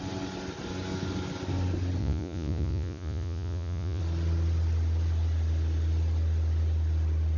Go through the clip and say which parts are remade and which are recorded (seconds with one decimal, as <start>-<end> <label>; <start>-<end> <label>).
0.0-2.0 recorded; 2.0-4.0 remade; 4.0-7.4 recorded